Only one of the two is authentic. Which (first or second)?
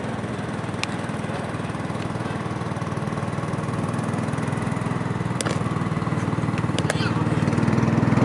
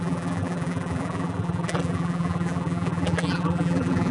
first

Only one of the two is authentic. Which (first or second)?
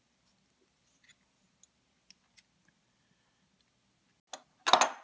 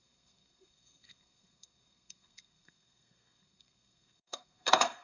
first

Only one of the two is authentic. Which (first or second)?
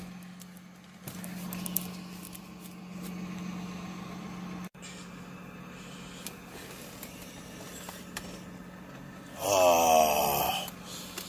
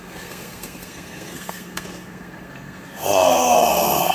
first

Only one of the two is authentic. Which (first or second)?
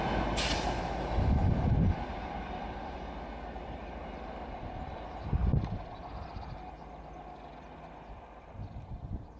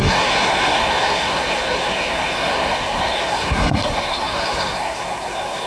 first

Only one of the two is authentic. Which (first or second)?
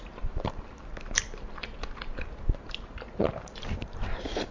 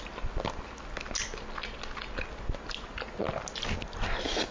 second